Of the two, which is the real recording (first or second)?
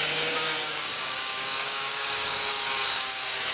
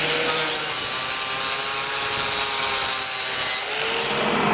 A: second